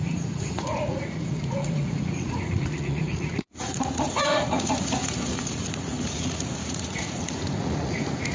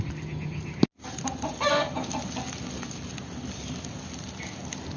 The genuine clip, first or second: second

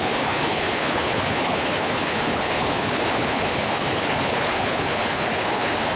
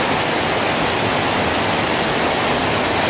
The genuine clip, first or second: second